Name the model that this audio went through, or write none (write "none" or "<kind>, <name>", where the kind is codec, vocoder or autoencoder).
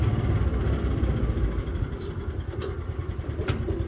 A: none